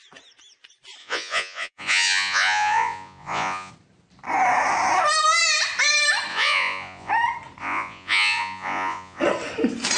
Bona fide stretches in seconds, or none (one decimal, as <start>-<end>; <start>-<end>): 0.0-1.0; 3.7-6.3; 7.1-7.6; 9.2-10.0

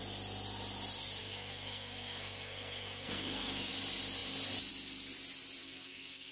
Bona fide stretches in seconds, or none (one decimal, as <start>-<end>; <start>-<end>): 0.0-1.2; 3.7-5.6

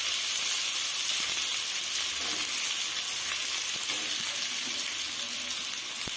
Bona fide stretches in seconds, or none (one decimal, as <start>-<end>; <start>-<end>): 0.0-6.2

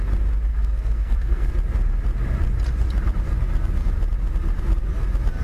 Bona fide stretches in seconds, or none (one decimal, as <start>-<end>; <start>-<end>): 0.0-0.5; 1.5-5.4

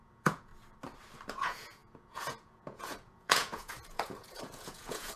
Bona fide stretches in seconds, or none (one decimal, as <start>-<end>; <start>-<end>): 0.5-1.3

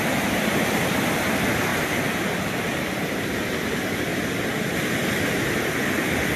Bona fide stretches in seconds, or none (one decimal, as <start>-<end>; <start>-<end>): 0.0-6.4